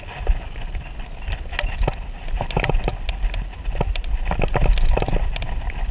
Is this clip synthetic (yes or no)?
no